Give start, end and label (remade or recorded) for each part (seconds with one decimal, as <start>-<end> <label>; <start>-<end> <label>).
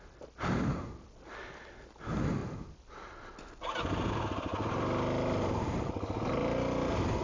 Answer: 0.0-7.2 recorded